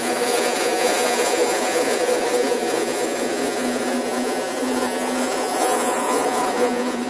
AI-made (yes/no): yes